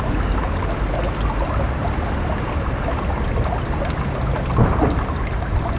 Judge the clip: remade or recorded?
recorded